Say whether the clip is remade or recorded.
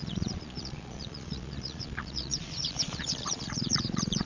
remade